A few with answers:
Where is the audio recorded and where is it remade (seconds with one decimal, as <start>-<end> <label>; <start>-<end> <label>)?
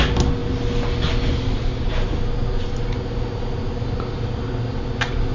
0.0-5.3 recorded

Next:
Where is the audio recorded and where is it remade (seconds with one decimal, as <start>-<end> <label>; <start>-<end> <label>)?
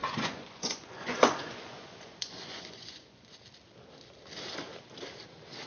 0.0-3.4 remade; 3.4-5.7 recorded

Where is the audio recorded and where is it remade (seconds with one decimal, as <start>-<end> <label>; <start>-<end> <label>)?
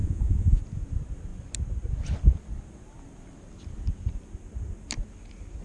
0.0-0.6 remade; 0.6-5.6 recorded